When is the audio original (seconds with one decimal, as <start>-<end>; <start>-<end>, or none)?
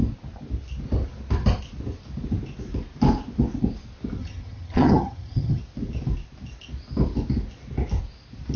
0.0-4.2; 5.6-8.6